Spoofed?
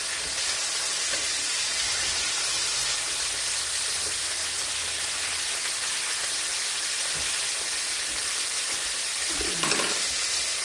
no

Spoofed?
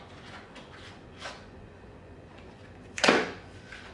yes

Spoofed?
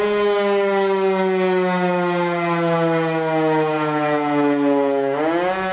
no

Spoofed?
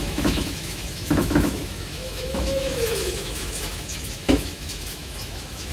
yes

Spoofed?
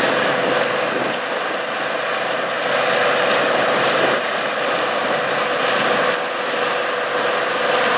no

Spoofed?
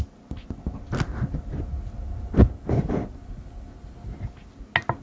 no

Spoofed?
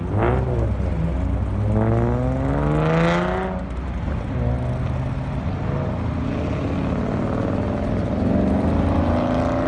no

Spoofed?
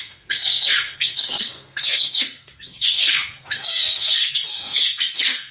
yes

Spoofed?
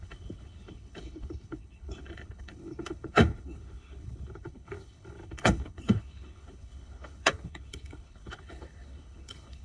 yes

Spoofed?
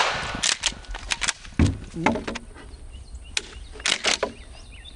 no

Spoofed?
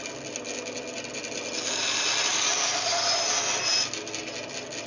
no